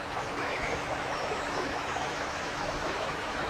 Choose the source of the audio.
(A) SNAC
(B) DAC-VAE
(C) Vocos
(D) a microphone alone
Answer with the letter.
B